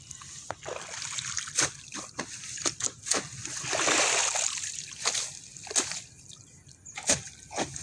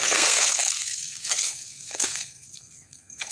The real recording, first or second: first